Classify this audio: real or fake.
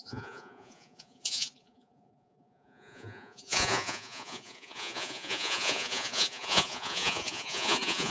fake